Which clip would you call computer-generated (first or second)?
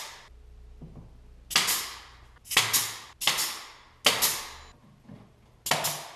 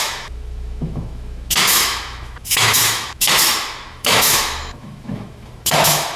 second